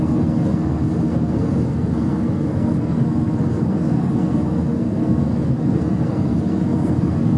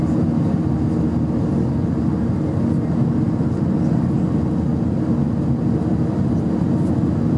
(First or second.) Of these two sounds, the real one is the second